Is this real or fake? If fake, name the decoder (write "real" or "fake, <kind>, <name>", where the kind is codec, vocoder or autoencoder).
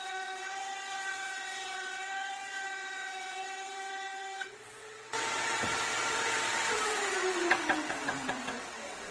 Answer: fake, vocoder, WaveNeXt